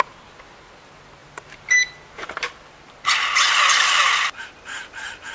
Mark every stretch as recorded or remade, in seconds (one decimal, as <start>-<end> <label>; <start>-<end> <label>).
0.0-1.2 recorded; 1.2-2.5 remade; 2.5-5.3 recorded